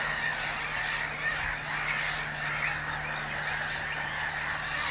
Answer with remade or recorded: recorded